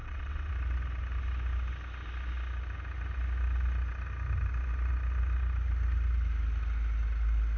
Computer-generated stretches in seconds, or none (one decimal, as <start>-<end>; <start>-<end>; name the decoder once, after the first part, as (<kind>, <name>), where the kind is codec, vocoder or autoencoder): 0.0-0.5 (vocoder, WaveNeXt)